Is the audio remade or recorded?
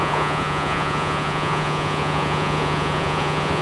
remade